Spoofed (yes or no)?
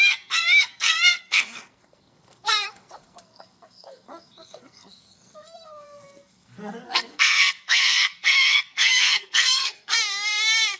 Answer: yes